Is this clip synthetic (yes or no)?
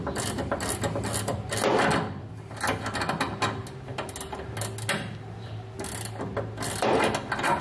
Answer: no